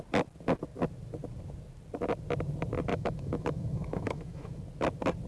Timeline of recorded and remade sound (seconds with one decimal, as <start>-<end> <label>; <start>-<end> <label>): 0.0-2.9 recorded; 2.9-4.6 remade; 4.6-5.3 recorded